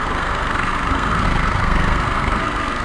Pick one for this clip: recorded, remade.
remade